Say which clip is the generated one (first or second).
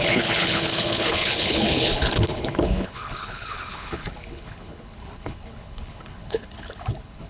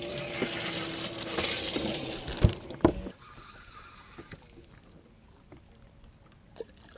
first